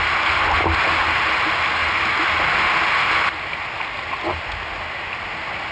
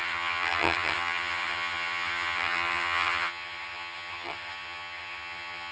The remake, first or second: second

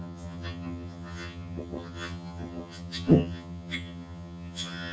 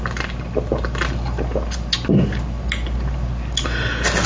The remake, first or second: first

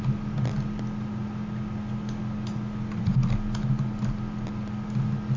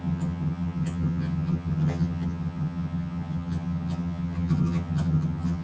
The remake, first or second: second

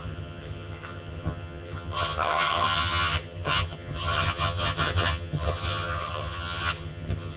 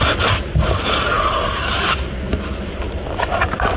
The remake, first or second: first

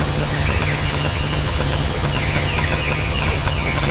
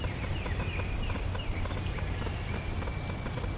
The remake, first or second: first